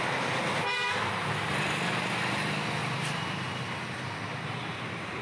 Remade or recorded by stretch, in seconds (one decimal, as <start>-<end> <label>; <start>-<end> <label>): 0.0-1.2 recorded; 1.2-2.1 remade; 2.1-2.8 recorded; 2.8-3.5 remade; 3.5-4.3 recorded; 4.3-5.2 remade